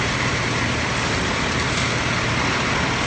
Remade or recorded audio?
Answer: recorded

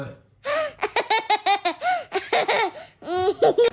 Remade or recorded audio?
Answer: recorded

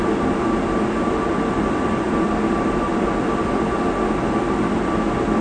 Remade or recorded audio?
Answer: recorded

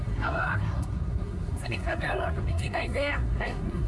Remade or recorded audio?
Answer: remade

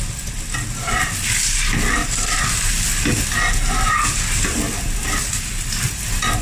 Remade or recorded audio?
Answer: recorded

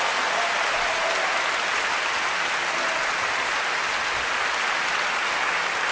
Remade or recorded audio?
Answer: recorded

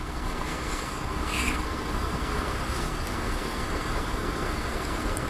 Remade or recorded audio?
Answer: remade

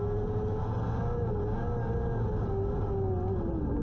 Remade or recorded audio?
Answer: recorded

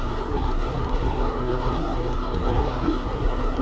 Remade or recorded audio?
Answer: remade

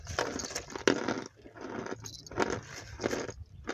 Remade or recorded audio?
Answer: recorded